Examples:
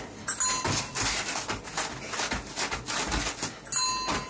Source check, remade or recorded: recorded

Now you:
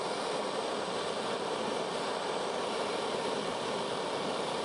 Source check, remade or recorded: recorded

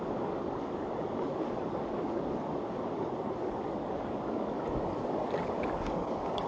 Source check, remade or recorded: remade